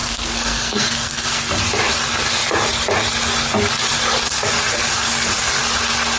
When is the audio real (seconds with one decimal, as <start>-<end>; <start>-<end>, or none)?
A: 1.6-6.2